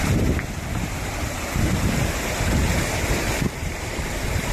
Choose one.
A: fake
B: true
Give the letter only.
A